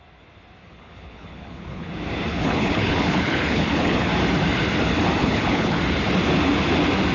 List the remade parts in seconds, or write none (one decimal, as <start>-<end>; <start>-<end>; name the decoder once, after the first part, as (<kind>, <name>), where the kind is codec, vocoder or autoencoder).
0.7-1.9 (codec, HILCodec); 2.3-4.1; 5.2-5.8